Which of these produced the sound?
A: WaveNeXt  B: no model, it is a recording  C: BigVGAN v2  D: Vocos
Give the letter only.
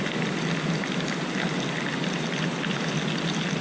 B